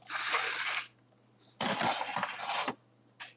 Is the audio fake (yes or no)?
no